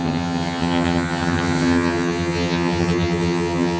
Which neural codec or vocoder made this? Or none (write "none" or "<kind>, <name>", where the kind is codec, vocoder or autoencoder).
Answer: vocoder, HiFi-GAN